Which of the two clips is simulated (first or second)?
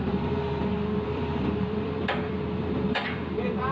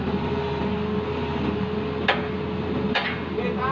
first